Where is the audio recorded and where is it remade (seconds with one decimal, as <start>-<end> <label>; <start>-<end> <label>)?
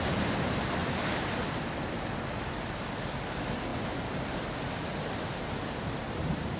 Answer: 0.0-6.6 recorded